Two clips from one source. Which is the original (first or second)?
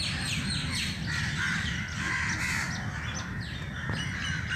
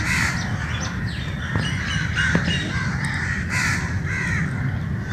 first